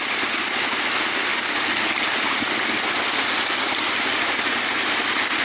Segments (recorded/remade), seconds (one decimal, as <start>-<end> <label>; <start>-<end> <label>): 0.0-5.4 recorded